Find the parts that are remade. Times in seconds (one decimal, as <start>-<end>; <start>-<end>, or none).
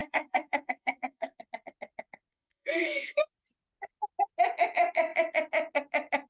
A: 0.0-1.4; 2.3-3.2